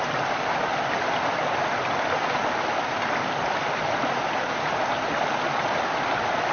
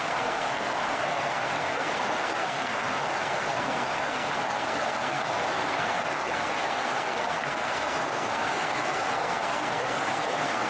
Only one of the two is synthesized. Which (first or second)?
second